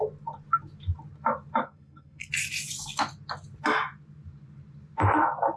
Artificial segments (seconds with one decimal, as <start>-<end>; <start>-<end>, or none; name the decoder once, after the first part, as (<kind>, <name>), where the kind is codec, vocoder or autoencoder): 1.6-2.3 (codec, SNAC)